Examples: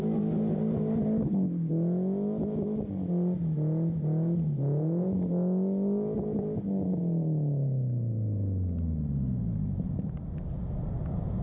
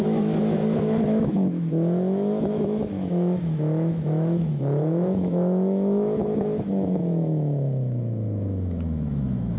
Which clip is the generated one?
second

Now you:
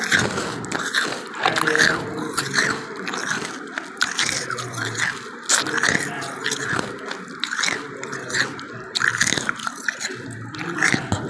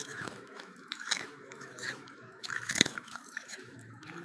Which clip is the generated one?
second